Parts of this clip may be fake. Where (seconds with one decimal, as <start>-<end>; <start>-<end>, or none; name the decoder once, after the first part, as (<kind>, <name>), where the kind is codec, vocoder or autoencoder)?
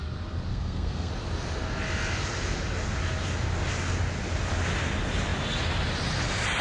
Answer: 0.5-1.1 (codec, SNAC)